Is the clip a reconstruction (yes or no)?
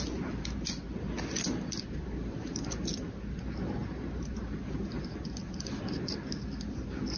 no